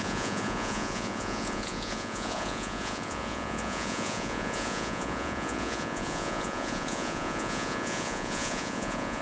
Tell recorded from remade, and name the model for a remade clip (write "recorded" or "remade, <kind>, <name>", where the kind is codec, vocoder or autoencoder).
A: remade, vocoder, Vocos